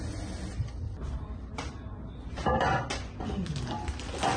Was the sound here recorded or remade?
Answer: recorded